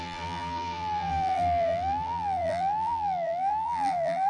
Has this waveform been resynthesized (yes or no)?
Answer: yes